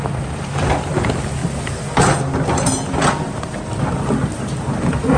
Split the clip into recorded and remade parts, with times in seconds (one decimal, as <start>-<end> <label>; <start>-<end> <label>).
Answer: 0.0-1.4 remade; 1.4-4.3 recorded; 4.3-5.2 remade